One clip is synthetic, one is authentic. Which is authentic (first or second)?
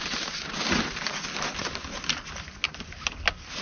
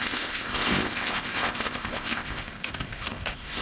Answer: first